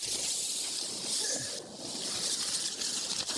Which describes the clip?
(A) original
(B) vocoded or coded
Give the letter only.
A